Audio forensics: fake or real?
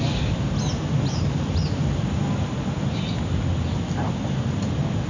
real